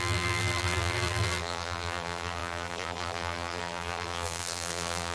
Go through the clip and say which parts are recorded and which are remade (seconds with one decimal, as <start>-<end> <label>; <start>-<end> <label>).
0.0-5.1 remade